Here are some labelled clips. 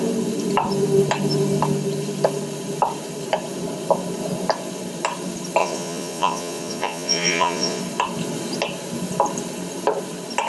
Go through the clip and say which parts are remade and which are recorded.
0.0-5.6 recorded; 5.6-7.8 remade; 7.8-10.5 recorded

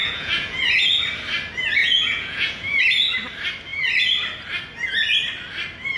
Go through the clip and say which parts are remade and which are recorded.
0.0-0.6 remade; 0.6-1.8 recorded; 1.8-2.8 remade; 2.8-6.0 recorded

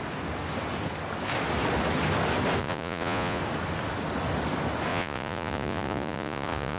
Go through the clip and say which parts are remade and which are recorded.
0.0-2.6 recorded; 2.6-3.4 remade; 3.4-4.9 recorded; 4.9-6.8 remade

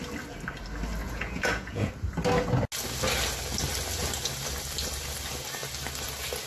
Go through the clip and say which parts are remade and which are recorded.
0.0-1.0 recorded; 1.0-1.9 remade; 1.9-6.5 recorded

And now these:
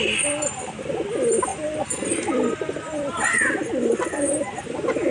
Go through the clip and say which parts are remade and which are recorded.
0.0-5.1 recorded